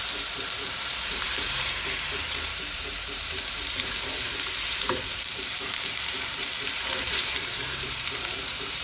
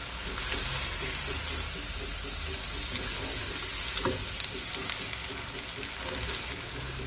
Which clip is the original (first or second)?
second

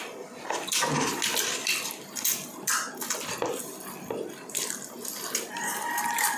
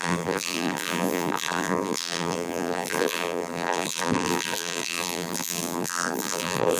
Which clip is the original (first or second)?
first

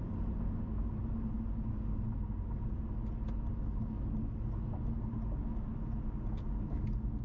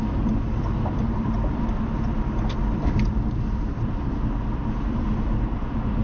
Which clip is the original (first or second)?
first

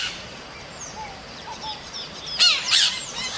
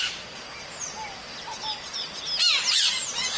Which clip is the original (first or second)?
second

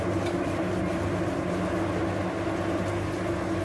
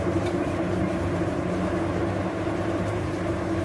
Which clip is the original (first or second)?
first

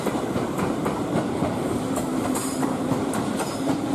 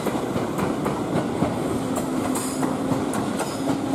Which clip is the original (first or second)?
second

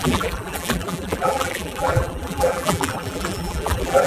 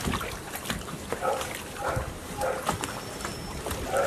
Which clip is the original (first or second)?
second